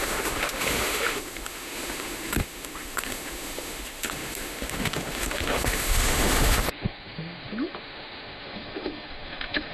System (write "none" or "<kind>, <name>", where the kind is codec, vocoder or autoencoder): autoencoder, DAC-VAE